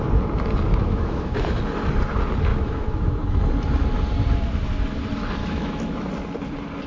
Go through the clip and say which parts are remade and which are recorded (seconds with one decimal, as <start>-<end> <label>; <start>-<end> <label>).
0.0-0.7 recorded; 0.7-1.6 remade; 1.6-2.5 recorded; 2.5-3.4 remade; 3.4-5.4 recorded; 5.4-6.1 remade; 6.1-6.9 recorded